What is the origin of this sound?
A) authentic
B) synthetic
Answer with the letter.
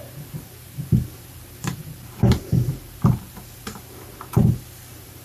B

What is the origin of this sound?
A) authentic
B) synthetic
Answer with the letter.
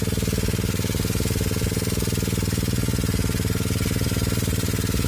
A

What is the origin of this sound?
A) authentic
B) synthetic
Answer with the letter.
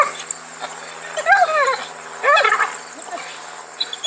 A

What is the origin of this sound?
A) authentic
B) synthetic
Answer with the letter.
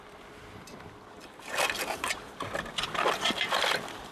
B